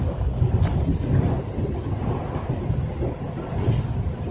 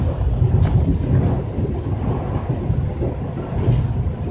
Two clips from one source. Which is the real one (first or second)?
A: second